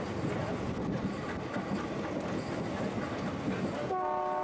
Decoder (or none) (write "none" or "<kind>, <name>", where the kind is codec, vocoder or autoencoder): none